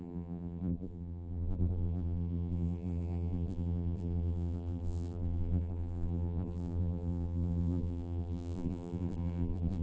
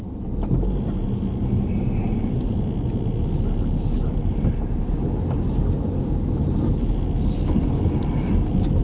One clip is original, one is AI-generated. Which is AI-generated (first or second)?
first